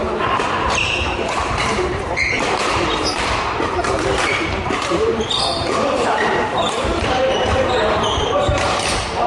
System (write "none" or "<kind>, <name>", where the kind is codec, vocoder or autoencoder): vocoder, BigVGAN v2